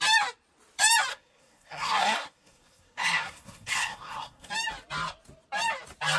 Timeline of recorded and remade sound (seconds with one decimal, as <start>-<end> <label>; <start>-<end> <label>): 0.0-1.1 recorded; 1.1-4.5 remade; 4.5-6.2 recorded